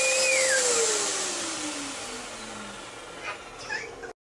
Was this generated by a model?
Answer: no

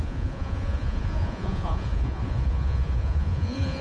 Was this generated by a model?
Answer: yes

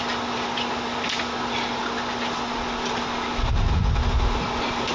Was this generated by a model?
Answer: no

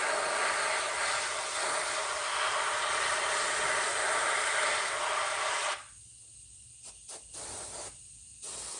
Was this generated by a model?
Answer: no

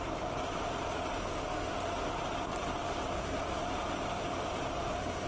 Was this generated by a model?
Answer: no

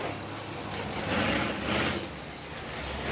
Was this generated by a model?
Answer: no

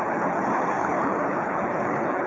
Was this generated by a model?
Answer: yes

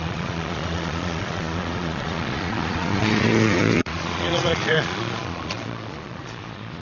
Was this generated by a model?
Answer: yes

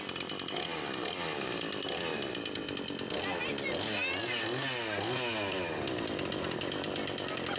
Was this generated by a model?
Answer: no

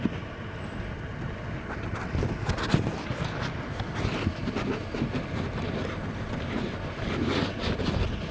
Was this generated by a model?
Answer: no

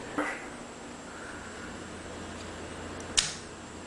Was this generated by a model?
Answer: no